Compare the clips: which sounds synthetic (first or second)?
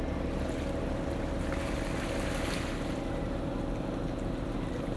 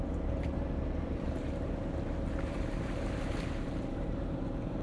second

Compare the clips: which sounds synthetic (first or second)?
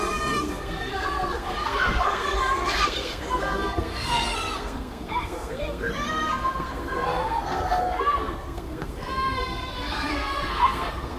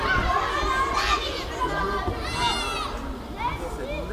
first